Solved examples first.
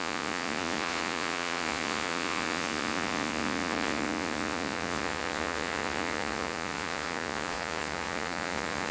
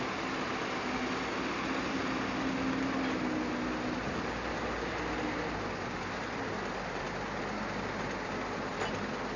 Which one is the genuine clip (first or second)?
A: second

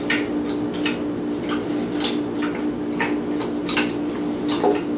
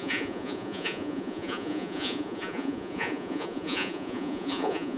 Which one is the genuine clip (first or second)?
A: first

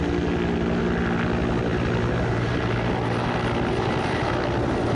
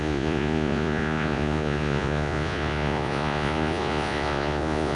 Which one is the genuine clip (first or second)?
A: first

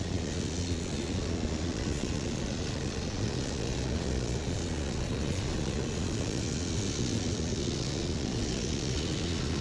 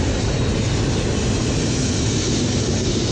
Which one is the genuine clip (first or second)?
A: second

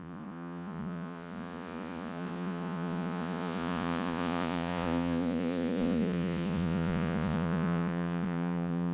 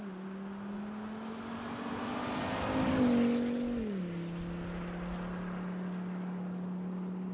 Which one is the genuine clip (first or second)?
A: second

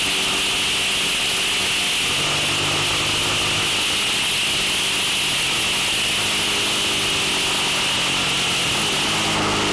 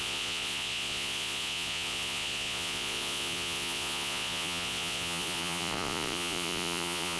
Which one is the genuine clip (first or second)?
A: first